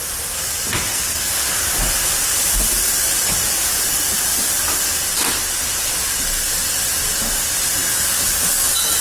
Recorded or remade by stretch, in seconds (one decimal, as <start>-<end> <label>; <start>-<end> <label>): 0.0-0.9 recorded; 0.9-1.6 remade; 1.6-9.0 recorded